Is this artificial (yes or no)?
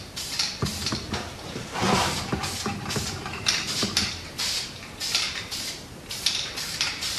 yes